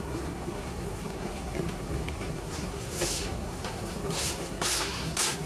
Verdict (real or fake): fake